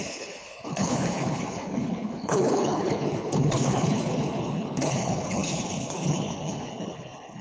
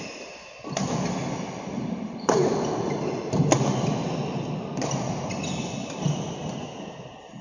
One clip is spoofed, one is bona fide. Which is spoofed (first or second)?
first